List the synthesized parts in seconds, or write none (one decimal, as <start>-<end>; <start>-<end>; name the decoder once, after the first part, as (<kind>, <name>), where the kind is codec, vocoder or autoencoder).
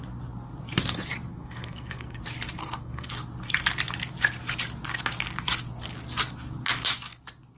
1.3-2.2 (codec, SNAC); 2.6-3.1